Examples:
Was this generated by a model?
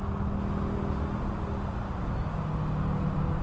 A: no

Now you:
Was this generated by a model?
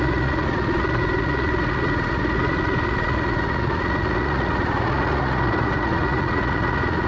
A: yes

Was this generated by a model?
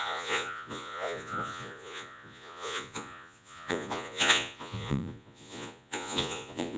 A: yes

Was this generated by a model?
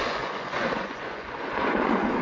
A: yes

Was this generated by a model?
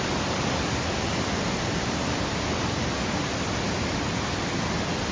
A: no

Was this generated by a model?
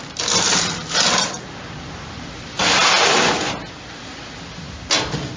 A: no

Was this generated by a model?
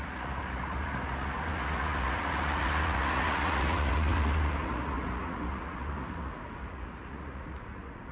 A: yes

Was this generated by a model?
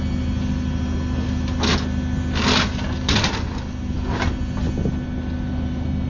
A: no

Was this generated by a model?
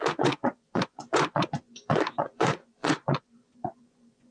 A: yes